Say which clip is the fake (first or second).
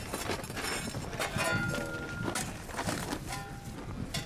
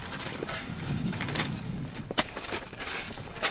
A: second